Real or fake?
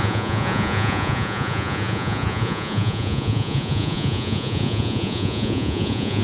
fake